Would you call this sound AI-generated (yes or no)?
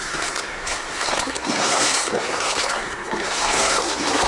yes